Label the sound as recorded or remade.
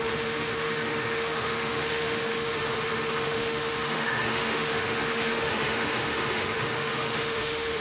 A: remade